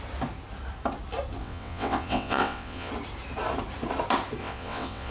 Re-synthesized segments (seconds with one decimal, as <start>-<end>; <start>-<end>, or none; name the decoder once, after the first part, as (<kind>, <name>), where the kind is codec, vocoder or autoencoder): 1.4-2.9 (vocoder, WaveNeXt); 4.4-5.1